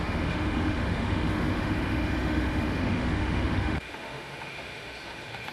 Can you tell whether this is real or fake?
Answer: fake